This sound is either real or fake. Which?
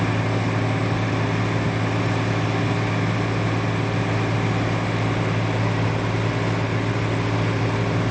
real